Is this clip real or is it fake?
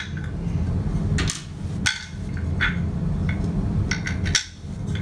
real